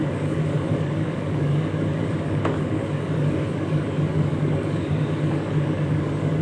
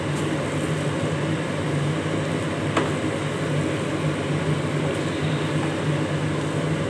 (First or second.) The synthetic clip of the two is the first